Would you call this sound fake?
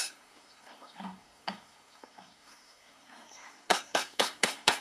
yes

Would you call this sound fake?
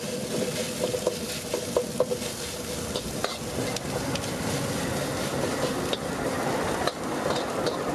no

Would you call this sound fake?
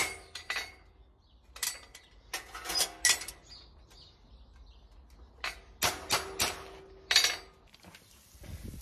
no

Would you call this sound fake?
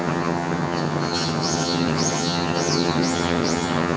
yes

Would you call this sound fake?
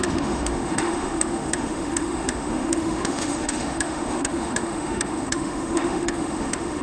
yes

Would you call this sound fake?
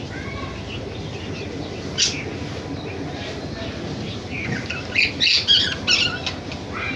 no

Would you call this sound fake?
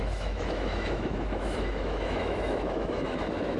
yes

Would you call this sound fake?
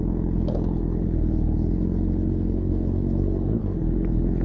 yes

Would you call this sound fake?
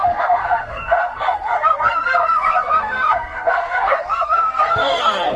yes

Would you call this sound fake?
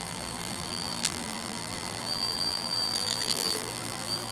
yes